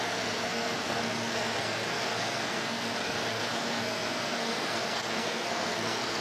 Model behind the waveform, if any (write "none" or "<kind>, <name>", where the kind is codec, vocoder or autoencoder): codec, SNAC